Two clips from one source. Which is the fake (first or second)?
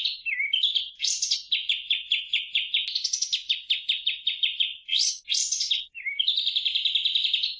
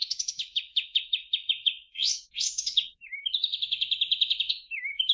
second